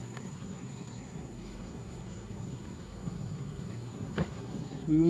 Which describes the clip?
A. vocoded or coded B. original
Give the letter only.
A